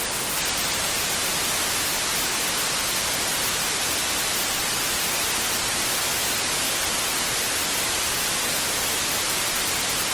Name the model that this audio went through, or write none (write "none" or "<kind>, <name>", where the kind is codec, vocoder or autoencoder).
none